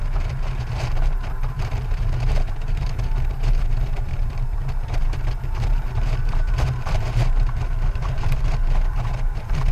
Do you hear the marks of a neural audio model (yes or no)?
yes